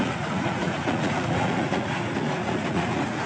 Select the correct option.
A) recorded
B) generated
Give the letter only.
B